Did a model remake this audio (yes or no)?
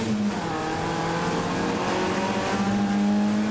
no